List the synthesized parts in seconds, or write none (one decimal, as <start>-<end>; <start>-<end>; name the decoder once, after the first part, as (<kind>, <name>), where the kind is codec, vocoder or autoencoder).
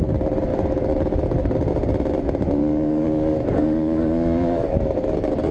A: 0.5-1.6 (codec, DAC); 2.6-5.5